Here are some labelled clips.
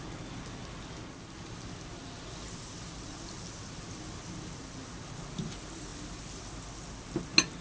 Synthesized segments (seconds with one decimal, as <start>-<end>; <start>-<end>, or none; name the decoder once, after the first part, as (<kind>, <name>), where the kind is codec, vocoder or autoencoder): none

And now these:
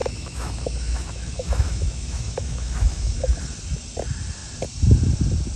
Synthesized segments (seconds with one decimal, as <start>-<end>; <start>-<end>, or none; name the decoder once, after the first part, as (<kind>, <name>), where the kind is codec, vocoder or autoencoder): 0.0-3.4 (autoencoder, DAC-VAE)

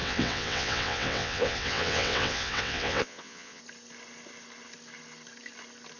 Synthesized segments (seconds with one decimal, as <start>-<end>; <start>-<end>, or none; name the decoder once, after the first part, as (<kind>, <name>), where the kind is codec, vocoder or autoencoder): 0.0-3.6 (vocoder, WaveNeXt)

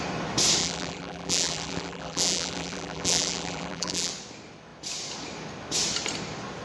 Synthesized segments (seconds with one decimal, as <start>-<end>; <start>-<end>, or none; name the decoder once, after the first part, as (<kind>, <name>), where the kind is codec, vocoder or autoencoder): 0.6-4.1 (vocoder, BigVGAN v2)

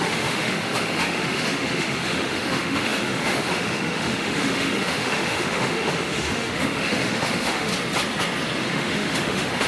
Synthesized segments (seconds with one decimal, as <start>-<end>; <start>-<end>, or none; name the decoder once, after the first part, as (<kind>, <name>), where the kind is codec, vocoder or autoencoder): 0.0-7.7 (autoencoder, DAC-VAE); 8.6-9.7

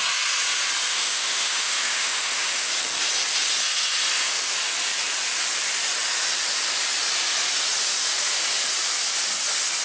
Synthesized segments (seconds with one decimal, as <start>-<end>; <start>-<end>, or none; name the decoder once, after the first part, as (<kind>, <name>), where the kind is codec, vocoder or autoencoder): 0.9-2.7 (autoencoder, DAC-VAE)